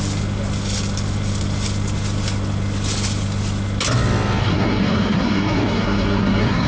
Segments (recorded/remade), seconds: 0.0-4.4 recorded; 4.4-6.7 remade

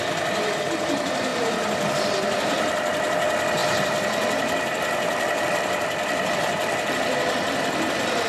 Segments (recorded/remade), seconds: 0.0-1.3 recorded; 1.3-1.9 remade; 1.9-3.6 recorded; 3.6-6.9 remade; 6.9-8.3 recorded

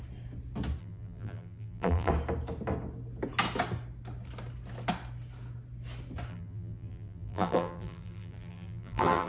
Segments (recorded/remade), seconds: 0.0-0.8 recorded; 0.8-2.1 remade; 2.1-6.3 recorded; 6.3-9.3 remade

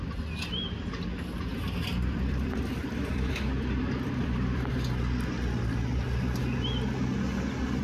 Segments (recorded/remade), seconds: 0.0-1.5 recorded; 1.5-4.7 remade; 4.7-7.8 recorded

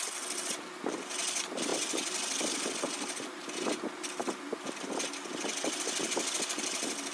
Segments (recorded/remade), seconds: 0.0-7.1 recorded